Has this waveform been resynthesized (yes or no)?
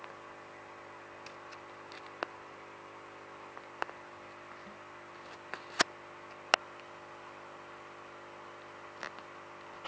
no